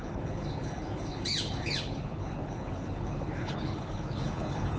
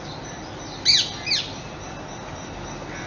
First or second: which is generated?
first